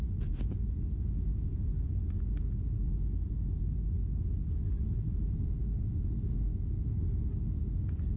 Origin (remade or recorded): recorded